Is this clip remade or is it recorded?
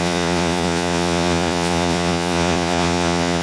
remade